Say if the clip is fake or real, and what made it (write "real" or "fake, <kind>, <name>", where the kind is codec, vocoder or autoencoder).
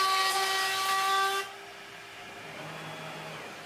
real